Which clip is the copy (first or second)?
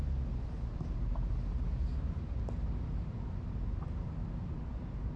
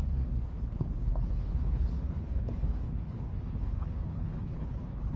second